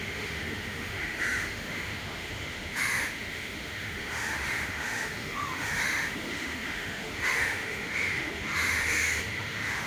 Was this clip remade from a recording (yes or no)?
yes